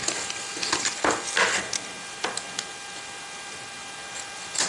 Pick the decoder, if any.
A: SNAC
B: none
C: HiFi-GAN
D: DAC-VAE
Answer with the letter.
B